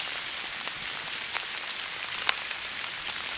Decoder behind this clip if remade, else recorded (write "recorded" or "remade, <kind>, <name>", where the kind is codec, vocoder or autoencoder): recorded